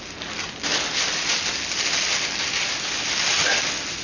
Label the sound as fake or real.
real